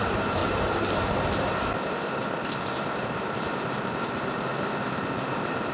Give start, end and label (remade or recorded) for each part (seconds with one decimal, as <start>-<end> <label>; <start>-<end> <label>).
0.0-0.4 remade; 0.4-2.6 recorded; 2.6-4.5 remade; 4.5-5.1 recorded; 5.1-5.7 remade